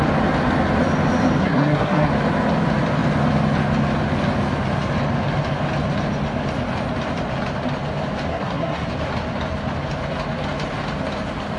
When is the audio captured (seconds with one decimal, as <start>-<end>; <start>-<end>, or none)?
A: 0.0-1.4; 2.1-8.3; 8.9-11.6